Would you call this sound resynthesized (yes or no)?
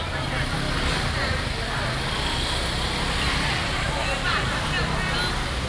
no